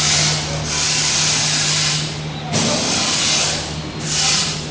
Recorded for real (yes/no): yes